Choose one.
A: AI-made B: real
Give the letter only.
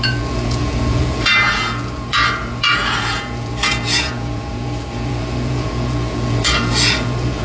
A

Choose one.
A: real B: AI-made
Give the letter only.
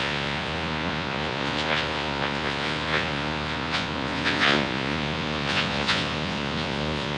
B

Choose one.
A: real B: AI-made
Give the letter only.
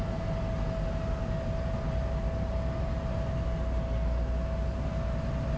A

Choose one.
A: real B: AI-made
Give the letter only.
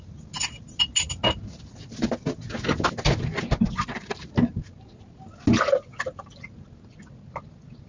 A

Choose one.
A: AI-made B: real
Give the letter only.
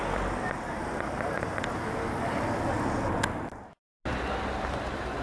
B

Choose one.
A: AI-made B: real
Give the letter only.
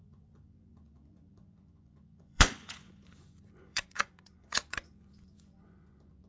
A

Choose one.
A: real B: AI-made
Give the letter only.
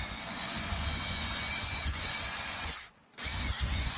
B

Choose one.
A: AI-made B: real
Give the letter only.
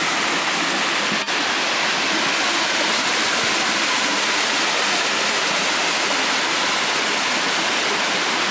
B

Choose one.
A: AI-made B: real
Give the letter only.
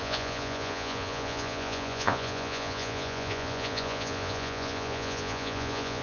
A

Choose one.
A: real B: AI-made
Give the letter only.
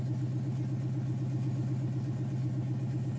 A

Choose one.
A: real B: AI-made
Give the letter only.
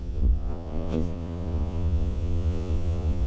B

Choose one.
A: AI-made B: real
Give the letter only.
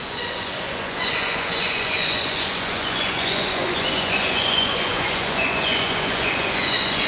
A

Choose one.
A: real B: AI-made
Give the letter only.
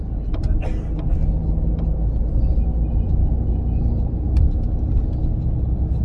A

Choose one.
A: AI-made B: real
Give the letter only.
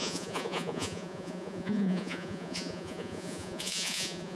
A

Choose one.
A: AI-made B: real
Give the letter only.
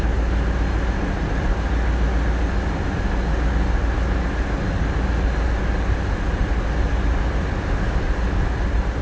B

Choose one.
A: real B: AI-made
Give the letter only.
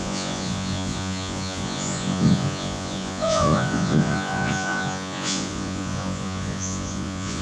B